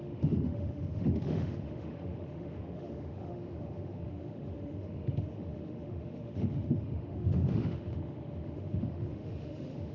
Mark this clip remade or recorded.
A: remade